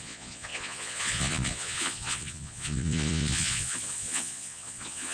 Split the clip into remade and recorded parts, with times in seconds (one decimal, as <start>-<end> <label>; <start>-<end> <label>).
0.0-5.1 remade

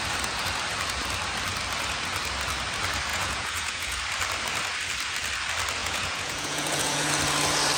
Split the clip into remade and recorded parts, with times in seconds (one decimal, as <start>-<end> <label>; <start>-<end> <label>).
0.0-3.1 recorded; 3.1-4.0 remade; 4.0-5.8 recorded; 5.8-7.1 remade; 7.1-7.8 recorded

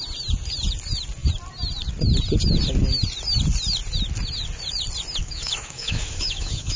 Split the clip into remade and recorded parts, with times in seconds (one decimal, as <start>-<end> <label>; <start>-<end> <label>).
0.0-5.2 recorded; 5.2-6.8 remade

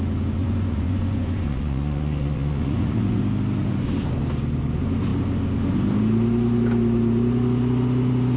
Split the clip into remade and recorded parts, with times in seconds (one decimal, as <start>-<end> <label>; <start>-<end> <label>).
0.0-0.4 recorded; 0.4-3.2 remade; 3.2-8.4 recorded

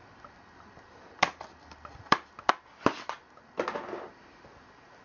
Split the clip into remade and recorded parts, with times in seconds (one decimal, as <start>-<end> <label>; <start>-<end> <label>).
0.0-2.5 remade; 2.5-5.0 recorded

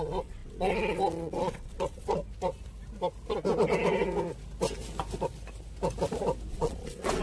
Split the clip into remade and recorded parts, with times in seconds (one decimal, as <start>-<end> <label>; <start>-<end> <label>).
0.0-2.2 remade; 2.2-6.5 recorded; 6.5-7.2 remade

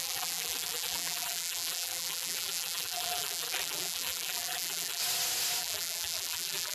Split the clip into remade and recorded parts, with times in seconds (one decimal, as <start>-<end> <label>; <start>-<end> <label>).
0.0-5.0 remade; 5.0-5.6 recorded; 5.6-6.7 remade